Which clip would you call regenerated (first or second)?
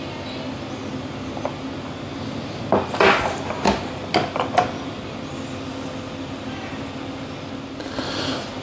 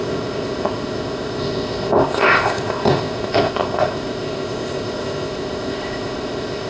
second